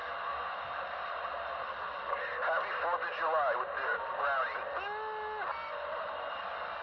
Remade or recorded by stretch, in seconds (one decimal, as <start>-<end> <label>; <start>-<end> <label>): 0.0-5.5 recorded; 5.5-6.8 remade